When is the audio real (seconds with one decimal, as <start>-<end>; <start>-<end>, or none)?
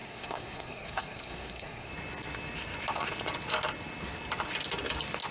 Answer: 1.9-5.3